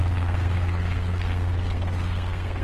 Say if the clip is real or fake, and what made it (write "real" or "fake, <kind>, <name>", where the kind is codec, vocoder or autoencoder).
fake, codec, SNAC